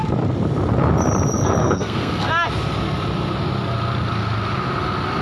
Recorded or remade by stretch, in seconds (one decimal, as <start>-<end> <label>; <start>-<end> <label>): 0.0-1.6 recorded; 1.6-2.3 remade; 2.3-5.2 recorded